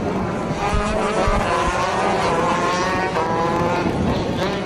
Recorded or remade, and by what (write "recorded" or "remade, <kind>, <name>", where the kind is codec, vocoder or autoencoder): recorded